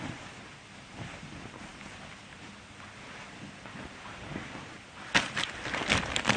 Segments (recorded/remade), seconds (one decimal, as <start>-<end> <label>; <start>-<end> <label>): 0.0-6.4 recorded